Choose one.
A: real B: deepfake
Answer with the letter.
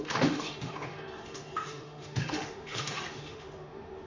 B